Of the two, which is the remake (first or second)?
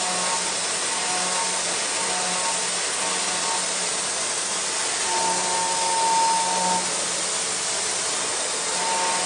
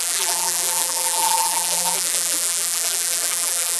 second